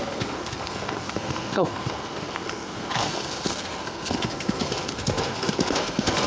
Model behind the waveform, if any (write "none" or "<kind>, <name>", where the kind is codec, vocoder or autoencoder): codec, SNAC